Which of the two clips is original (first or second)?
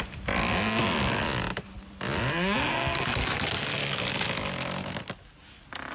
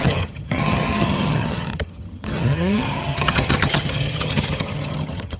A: first